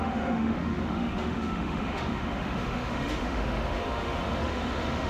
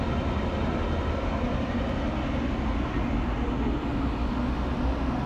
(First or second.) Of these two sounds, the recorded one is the second